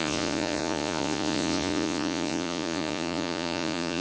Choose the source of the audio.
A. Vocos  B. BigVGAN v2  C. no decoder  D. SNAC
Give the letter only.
A